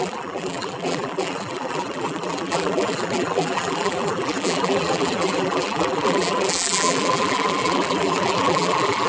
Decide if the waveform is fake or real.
fake